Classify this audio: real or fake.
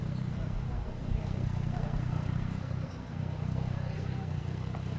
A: fake